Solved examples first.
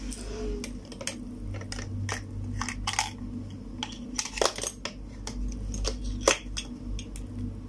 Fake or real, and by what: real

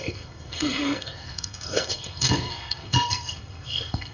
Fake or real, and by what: fake, codec, SNAC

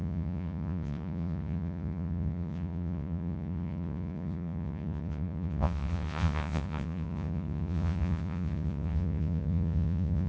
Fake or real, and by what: fake, vocoder, Vocos